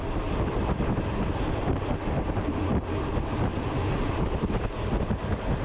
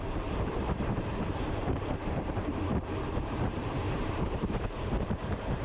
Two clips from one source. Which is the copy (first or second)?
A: second